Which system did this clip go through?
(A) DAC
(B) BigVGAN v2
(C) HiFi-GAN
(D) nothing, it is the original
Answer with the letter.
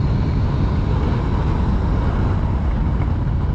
D